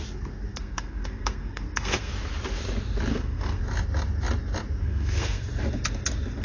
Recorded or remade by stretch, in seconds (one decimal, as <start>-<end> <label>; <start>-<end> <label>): 0.0-0.5 recorded; 0.5-2.1 remade; 2.1-3.1 recorded; 3.1-3.6 remade; 3.6-4.8 recorded; 4.8-5.5 remade; 5.5-6.4 recorded